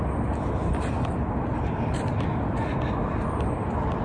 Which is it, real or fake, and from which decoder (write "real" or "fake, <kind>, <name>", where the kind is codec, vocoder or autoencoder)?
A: real